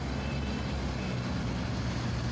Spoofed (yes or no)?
no